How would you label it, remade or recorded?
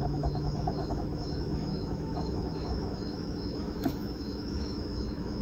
remade